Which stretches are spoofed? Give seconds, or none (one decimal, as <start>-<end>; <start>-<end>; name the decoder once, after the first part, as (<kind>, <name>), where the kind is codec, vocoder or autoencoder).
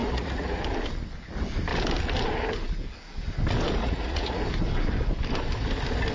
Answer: 0.0-0.6 (vocoder, Vocos); 3.8-4.4